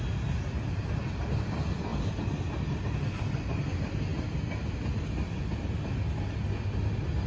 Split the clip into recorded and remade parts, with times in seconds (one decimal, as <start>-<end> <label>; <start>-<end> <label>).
0.0-7.3 recorded